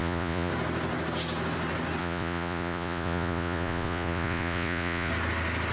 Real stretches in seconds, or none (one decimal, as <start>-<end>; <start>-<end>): 0.5-2.0; 5.1-5.7